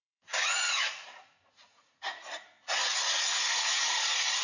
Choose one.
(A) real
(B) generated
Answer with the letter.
B